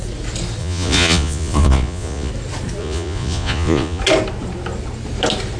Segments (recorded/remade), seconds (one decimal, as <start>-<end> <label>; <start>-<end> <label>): 0.0-0.6 recorded; 0.6-2.3 remade; 2.3-2.8 recorded; 2.8-4.0 remade; 4.0-5.6 recorded